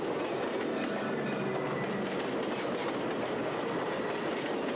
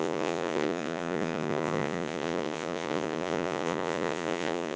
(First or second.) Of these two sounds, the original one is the first